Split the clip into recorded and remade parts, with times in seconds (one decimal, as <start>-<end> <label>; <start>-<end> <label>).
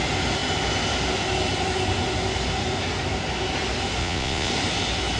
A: 0.0-4.0 recorded; 4.0-4.5 remade; 4.5-5.2 recorded